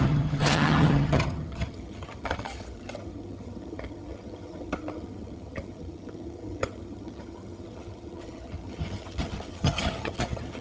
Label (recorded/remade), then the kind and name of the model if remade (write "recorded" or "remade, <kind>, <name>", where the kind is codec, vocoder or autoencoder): remade, vocoder, HiFi-GAN